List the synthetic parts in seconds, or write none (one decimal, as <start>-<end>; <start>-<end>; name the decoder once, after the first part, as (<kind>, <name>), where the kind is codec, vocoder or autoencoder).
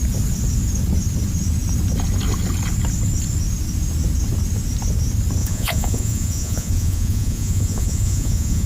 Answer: 5.4-8.7 (vocoder, Vocos)